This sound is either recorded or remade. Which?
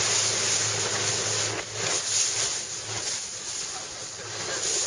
recorded